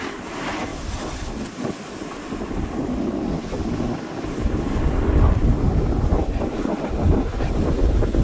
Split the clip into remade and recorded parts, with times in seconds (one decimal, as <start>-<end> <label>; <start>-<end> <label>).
0.0-0.7 recorded; 0.7-2.9 remade; 2.9-8.2 recorded